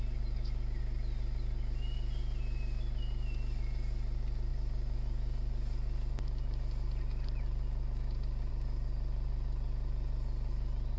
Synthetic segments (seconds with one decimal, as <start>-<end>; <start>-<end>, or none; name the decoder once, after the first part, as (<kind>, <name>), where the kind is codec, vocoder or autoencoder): none